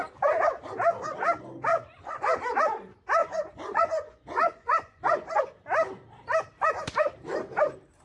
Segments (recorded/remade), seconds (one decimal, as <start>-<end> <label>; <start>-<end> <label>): 0.0-1.7 recorded; 1.7-2.4 remade; 2.4-3.2 recorded; 3.2-5.4 remade; 5.4-8.0 recorded